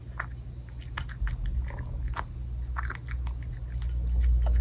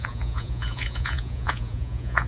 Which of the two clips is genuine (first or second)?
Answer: first